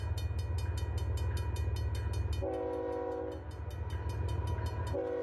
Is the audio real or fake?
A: real